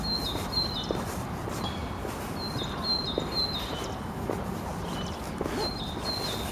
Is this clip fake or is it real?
real